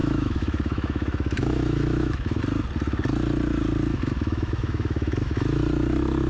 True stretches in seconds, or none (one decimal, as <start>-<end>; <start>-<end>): 2.4-3.9; 5.6-6.3